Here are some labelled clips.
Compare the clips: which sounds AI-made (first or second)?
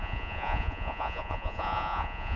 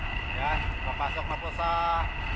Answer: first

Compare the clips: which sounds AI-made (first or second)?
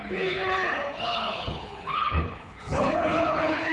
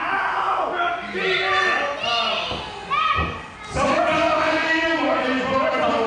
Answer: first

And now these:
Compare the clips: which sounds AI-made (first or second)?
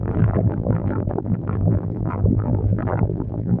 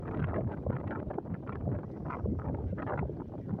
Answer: first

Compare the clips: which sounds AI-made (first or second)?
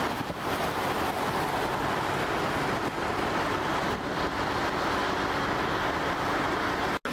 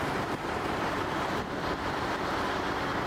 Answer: second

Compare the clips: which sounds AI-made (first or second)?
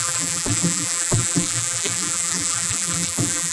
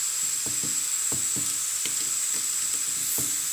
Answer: first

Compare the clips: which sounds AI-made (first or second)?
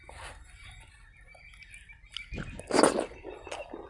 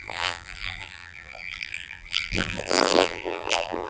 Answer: second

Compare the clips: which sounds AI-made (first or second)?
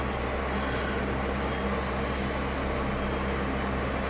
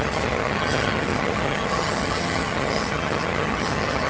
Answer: second